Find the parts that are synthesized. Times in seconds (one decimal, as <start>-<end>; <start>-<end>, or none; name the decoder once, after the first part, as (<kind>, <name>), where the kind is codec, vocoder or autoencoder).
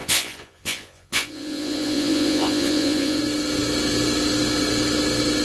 0.0-3.2 (vocoder, Vocos)